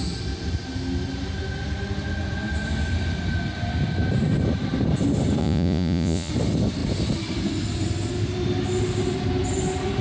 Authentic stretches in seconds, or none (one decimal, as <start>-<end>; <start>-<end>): 0.0-5.4; 6.3-10.0